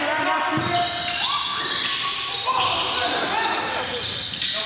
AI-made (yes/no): no